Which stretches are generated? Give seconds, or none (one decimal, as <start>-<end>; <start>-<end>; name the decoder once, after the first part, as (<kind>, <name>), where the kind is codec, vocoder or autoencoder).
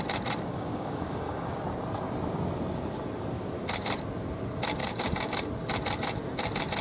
0.5-1.6 (codec, DAC); 4.8-5.4